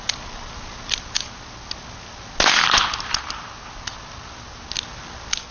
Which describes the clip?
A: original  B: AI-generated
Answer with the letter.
A